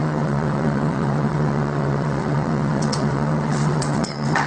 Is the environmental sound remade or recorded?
remade